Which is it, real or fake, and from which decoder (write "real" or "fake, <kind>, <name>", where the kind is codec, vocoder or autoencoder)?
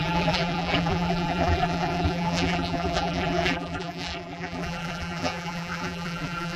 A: fake, vocoder, BigVGAN v2